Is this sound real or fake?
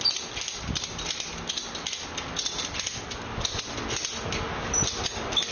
real